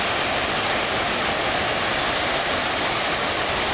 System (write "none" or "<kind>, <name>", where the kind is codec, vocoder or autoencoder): none